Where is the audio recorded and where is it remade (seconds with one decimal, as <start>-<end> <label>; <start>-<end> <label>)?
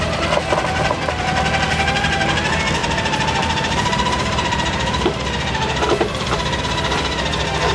0.0-2.8 recorded; 2.8-6.6 remade; 6.6-7.7 recorded